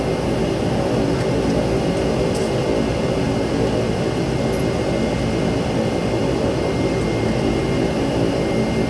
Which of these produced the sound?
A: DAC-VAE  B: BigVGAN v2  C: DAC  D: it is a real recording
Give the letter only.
D